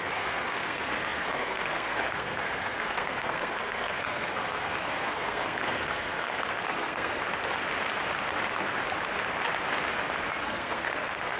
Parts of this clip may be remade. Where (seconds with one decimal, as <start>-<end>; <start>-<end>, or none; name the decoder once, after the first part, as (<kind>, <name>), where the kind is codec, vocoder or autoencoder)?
0.0-7.2 (codec, SNAC); 10.4-11.4